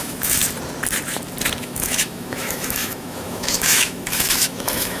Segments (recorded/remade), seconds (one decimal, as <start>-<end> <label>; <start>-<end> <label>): 0.0-0.4 remade; 0.4-1.6 recorded; 1.6-5.0 remade